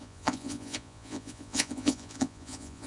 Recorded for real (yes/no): no